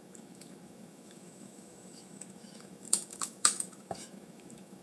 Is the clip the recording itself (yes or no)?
no